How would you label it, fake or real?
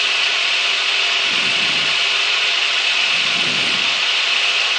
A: fake